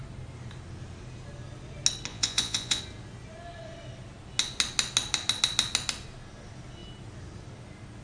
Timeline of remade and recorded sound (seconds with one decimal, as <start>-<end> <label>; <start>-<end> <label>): 0.0-2.1 recorded; 2.1-2.8 remade; 2.8-8.0 recorded